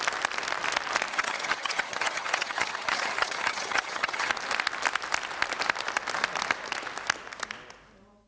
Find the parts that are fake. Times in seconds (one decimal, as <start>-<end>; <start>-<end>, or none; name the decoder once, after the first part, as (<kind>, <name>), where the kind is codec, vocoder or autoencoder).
1.1-4.3 (vocoder, HiFi-GAN)